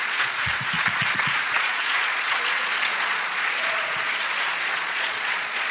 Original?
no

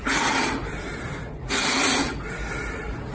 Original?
yes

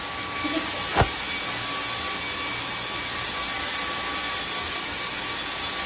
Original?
yes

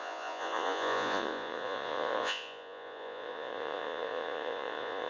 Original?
no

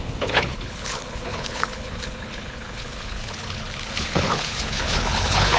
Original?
no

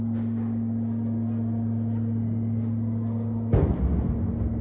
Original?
yes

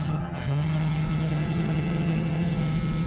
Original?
no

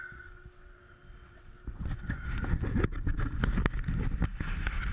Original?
yes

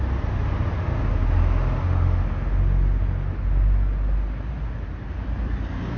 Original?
yes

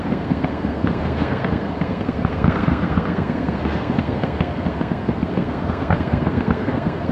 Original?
no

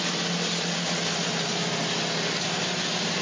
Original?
yes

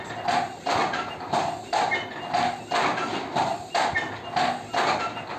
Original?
yes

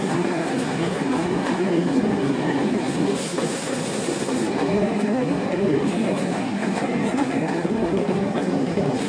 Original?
no